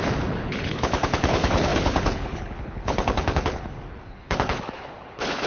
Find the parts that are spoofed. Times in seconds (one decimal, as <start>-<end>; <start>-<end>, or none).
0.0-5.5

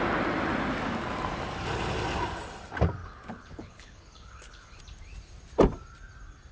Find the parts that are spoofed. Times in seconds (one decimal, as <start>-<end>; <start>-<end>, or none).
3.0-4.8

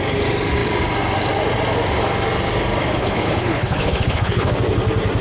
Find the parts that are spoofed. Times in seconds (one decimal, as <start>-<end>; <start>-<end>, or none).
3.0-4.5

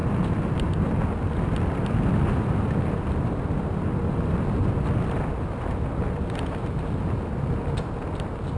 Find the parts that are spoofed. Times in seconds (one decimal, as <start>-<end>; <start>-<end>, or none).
none

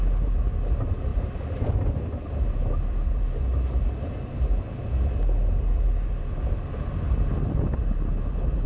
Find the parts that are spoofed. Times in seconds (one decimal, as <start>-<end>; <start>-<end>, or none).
none

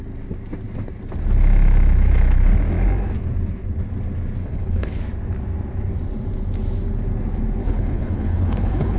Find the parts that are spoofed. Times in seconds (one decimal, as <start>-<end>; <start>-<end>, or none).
4.4-5.0; 7.6-9.0

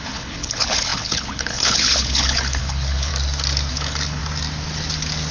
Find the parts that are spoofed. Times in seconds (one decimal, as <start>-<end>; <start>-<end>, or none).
0.0-3.1; 3.7-4.2

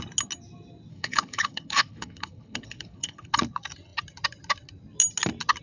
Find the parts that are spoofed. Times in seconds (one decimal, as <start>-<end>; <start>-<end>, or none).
0.9-3.3